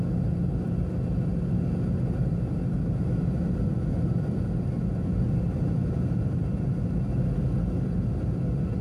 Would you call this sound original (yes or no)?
yes